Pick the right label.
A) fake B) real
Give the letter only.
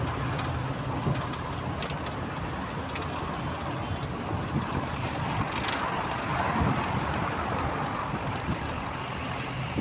B